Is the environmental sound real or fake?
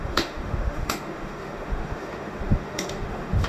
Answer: fake